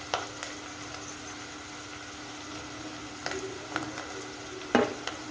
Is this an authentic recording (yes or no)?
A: yes